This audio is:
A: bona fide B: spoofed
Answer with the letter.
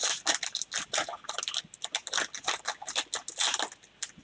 A